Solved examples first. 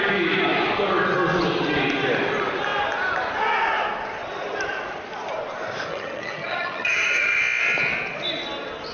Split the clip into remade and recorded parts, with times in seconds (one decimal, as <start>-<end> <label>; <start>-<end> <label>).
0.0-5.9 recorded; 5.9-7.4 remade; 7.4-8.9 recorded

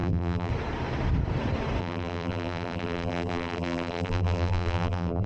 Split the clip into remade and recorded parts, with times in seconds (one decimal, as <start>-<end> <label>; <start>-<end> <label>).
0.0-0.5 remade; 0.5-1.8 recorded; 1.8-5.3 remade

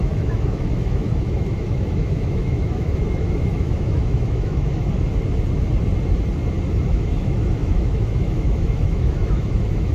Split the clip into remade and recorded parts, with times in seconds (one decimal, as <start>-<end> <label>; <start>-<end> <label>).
0.0-5.1 remade; 5.1-6.8 recorded; 6.8-9.9 remade

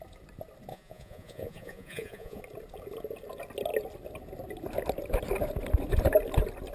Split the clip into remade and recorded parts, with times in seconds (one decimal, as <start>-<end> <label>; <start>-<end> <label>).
0.0-0.7 recorded; 0.7-2.4 remade; 2.4-6.7 recorded

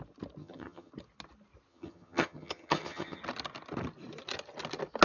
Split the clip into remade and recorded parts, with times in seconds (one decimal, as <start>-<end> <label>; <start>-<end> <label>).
0.0-0.4 recorded; 0.4-0.9 remade; 0.9-1.7 recorded; 1.7-3.2 remade; 3.2-5.0 recorded